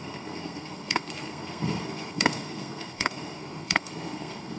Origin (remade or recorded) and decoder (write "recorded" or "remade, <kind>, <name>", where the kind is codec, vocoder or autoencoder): remade, codec, SNAC